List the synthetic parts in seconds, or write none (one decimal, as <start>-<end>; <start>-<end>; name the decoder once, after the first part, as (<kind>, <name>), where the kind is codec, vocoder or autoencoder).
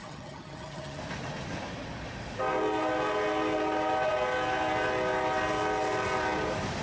0.0-1.0 (vocoder, HiFi-GAN)